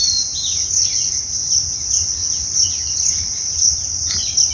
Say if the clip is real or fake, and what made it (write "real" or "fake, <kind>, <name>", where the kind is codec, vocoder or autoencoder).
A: real